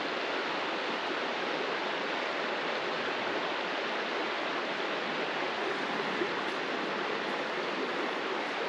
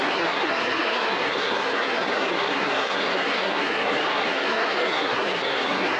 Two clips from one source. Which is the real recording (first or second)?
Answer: first